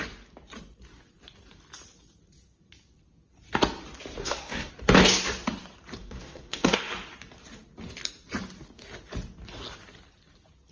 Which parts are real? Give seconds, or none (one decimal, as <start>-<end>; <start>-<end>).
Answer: 0.0-4.2; 4.7-6.0; 6.9-10.7